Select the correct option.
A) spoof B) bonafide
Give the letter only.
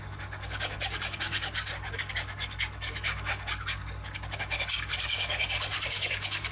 A